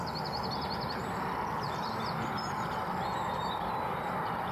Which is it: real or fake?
real